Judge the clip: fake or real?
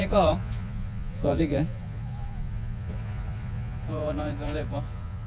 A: fake